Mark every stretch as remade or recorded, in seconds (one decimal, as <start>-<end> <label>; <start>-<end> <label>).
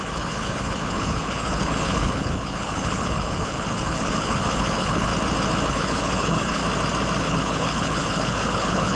0.0-5.1 remade; 5.1-5.7 recorded; 5.7-6.6 remade; 6.6-7.2 recorded; 7.2-9.0 remade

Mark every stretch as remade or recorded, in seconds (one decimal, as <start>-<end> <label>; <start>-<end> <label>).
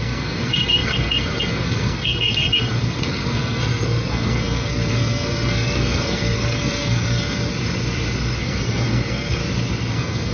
0.0-7.5 remade; 7.5-8.4 recorded; 8.4-9.4 remade; 9.4-9.9 recorded; 9.9-10.3 remade